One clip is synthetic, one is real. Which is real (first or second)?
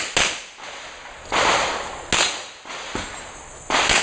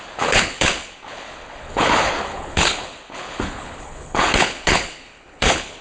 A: first